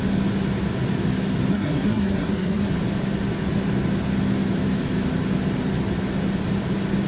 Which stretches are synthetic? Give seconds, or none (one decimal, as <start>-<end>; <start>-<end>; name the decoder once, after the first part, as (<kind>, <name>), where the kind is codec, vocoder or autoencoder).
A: 1.5-2.7 (codec, SNAC)